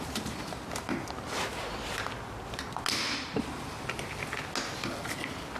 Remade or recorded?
recorded